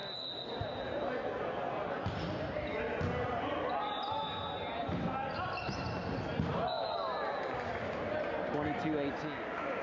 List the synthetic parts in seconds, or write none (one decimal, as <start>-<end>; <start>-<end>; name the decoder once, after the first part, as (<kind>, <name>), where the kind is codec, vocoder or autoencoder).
none